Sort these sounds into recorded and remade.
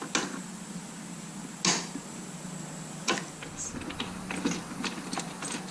recorded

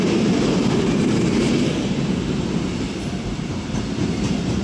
remade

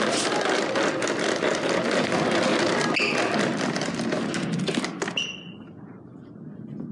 recorded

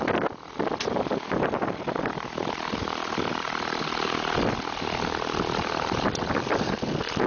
recorded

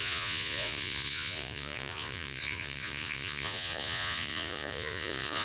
remade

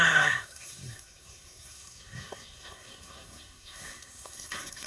remade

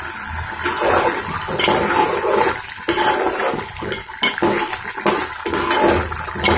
recorded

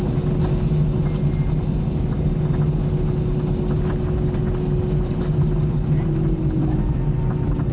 recorded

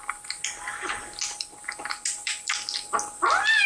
recorded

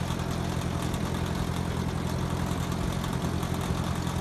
recorded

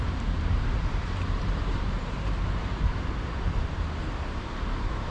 remade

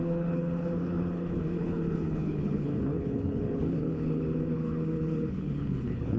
remade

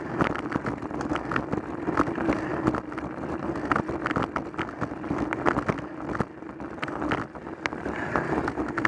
recorded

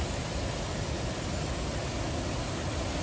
recorded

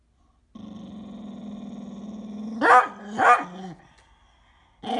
recorded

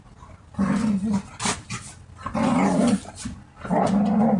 recorded